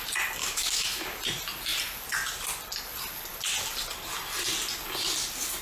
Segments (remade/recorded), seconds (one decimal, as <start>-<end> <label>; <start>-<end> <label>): 0.0-0.4 recorded; 0.4-1.2 remade; 1.2-5.6 recorded